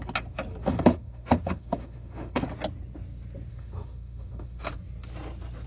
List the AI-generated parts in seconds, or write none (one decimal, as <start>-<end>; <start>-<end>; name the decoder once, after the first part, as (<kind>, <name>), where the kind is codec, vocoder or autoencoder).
0.6-2.4 (autoencoder, DAC-VAE); 3.5-4.7